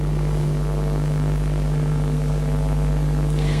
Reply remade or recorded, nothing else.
remade